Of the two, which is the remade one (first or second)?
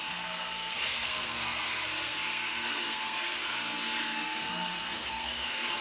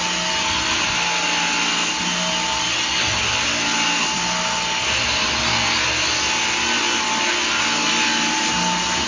first